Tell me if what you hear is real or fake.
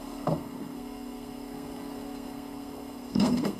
fake